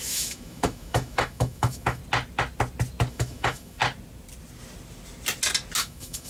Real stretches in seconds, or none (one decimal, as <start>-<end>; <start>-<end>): 2.0-3.1; 3.8-5.8